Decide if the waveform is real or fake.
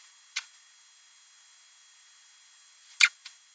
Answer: real